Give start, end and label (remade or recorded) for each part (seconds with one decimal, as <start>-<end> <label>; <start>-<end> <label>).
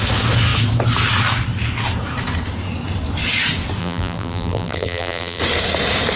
0.0-3.8 recorded; 3.8-5.4 remade; 5.4-6.2 recorded